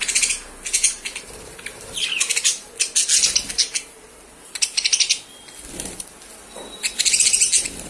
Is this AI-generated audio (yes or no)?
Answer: no